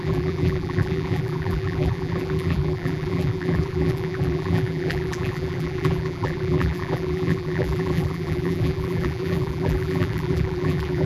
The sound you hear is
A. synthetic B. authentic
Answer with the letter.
A